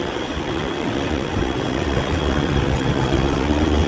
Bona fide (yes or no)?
no